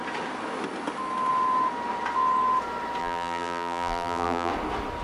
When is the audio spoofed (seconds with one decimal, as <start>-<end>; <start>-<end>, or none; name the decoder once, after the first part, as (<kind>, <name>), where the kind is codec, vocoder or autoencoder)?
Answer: 3.0-4.5 (vocoder, BigVGAN v2)